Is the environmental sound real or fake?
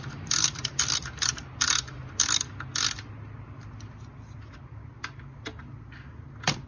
real